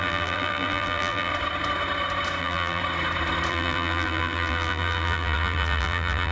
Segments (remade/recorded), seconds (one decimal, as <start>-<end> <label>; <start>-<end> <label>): 0.0-1.3 remade; 1.3-2.4 recorded; 2.4-2.8 remade; 2.8-3.5 recorded; 3.5-6.3 remade